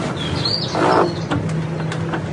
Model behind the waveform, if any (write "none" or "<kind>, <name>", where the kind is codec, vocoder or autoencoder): none